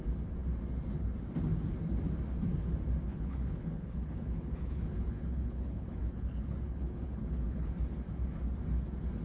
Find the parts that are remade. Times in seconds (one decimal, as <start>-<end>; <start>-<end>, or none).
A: 3.1-7.7